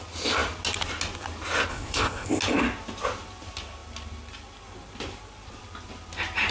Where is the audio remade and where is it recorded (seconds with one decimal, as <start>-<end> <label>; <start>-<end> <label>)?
0.0-1.7 recorded; 1.7-2.4 remade; 2.4-6.5 recorded